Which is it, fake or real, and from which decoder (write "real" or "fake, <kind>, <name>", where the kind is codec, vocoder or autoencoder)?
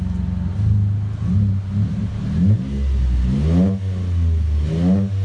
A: real